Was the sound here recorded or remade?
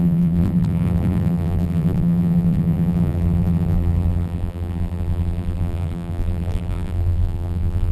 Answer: remade